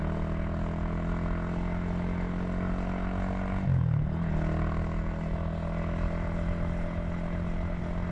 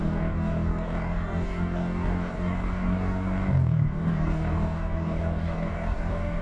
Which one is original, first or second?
first